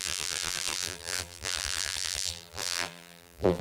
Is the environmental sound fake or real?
fake